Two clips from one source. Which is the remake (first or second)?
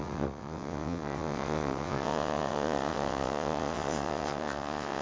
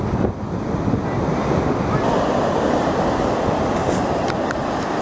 first